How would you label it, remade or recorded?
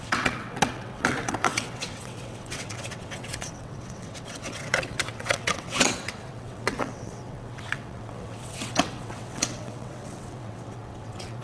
remade